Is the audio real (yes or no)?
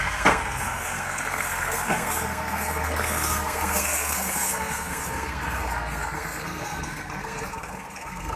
no